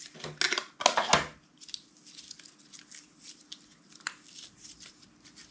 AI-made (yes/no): no